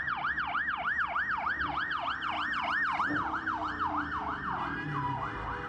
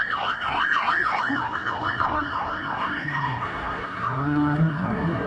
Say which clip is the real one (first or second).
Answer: first